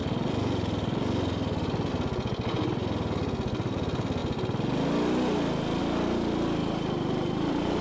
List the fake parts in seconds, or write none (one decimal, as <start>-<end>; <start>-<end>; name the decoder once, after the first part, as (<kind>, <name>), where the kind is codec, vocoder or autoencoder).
6.6-7.8 (vocoder, BigVGAN v2)